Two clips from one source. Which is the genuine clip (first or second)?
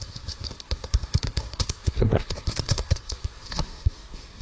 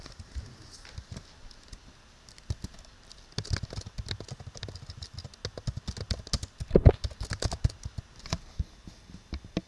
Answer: second